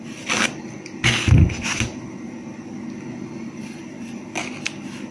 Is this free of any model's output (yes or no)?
yes